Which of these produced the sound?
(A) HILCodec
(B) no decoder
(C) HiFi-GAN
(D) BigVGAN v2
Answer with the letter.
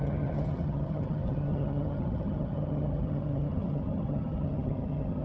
C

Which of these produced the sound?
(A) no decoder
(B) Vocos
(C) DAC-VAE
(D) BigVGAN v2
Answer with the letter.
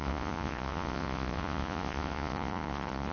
B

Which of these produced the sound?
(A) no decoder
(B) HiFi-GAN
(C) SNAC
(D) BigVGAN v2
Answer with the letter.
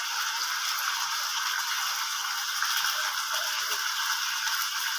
A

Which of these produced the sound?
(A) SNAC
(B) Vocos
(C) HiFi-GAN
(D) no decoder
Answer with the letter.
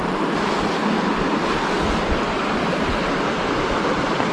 D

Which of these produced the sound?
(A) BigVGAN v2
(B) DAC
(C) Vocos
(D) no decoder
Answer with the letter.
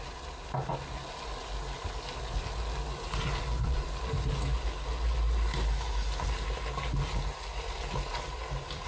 D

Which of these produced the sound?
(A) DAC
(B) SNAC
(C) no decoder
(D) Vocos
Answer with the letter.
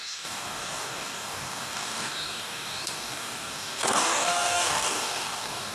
A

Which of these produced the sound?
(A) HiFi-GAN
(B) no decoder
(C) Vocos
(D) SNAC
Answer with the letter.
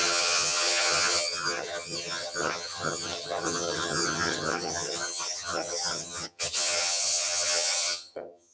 A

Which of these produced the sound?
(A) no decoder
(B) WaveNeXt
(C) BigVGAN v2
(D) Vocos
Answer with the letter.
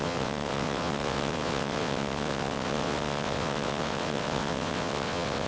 B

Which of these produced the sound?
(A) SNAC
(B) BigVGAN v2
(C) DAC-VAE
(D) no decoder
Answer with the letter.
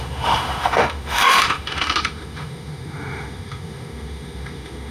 C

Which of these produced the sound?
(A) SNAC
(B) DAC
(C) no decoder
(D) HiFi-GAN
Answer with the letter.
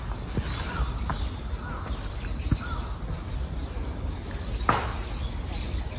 C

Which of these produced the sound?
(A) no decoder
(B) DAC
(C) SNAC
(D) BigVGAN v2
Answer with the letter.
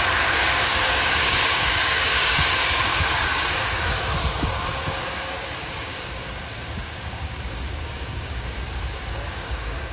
B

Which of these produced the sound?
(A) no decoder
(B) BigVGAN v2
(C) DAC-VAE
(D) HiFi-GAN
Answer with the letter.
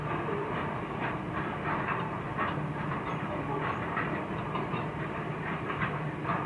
B